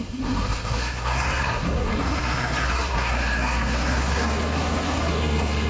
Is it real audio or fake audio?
fake